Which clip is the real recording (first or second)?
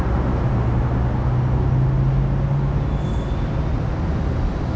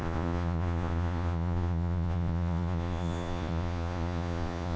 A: first